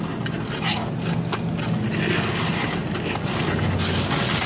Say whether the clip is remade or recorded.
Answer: recorded